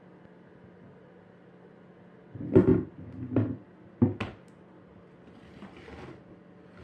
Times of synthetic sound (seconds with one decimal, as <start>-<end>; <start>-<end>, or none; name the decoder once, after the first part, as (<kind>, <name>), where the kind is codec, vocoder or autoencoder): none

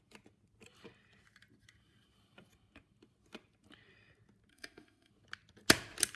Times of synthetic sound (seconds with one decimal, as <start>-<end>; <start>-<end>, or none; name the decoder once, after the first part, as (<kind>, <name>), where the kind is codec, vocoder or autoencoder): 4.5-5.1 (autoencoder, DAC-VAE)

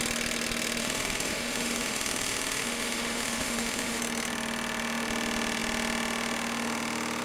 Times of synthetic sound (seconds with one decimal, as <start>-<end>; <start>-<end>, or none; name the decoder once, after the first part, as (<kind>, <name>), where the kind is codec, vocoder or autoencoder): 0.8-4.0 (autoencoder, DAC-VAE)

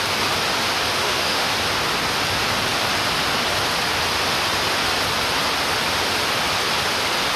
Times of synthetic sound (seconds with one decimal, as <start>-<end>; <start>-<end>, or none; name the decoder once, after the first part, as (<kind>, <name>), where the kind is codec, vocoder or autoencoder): 1.0-1.5 (autoencoder, DAC-VAE)

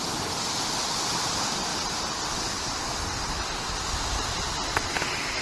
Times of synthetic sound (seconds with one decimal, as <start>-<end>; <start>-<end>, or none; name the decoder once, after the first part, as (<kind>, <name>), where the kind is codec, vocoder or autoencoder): none

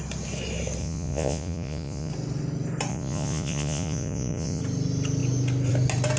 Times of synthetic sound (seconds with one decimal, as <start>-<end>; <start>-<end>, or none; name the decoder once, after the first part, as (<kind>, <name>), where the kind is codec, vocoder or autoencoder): 0.8-2.1 (vocoder, Vocos); 2.9-4.6

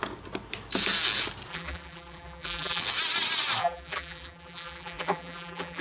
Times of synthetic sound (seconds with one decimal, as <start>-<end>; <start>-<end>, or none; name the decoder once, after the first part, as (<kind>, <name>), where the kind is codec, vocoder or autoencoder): 1.5-2.8 (vocoder, BigVGAN v2); 3.6-5.8